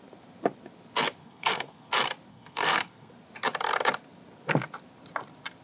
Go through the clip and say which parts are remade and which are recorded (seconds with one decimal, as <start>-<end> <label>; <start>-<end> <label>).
0.0-1.2 recorded; 1.2-1.9 remade; 1.9-2.3 recorded; 2.3-3.1 remade; 3.1-5.6 recorded